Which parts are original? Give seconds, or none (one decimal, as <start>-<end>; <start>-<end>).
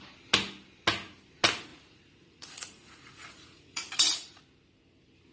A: 0.0-1.7; 4.4-5.3